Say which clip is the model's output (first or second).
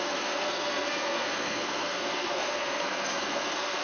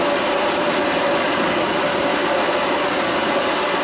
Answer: first